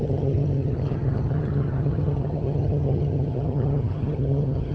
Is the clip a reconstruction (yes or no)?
yes